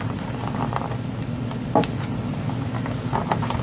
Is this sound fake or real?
real